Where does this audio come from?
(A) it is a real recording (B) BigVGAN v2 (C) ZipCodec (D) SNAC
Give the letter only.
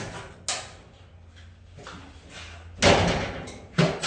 A